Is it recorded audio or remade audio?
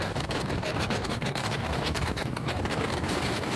remade